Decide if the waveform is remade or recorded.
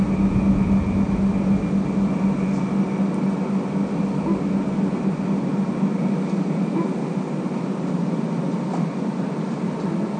recorded